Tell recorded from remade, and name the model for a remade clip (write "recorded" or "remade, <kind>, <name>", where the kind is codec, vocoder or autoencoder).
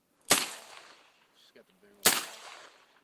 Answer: recorded